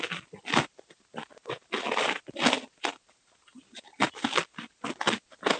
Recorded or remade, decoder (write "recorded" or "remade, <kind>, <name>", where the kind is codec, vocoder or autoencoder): recorded